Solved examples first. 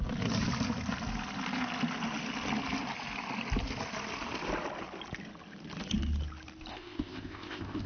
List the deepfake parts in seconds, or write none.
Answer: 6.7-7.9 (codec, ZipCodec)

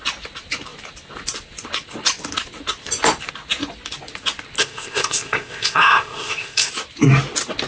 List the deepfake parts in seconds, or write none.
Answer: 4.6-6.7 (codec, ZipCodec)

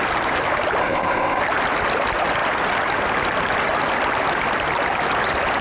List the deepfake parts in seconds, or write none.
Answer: 0.8-1.4 (codec, ZipCodec)